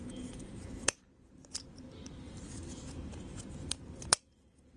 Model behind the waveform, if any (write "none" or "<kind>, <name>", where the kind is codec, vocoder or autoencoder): vocoder, BigVGAN v2